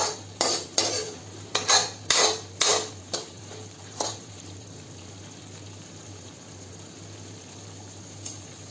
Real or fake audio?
fake